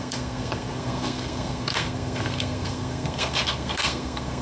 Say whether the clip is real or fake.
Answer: fake